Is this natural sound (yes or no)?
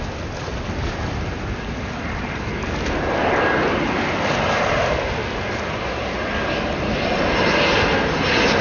yes